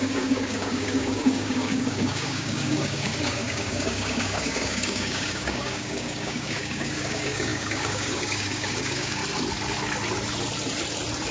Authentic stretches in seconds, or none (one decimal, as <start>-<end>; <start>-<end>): 9.2-11.3